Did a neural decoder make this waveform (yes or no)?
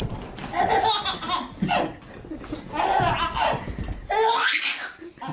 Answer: no